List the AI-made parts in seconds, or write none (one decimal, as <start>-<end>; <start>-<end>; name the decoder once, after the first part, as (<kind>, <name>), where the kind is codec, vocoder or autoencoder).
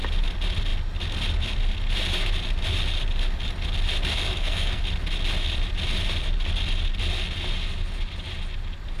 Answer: 4.1-4.8 (codec, SNAC)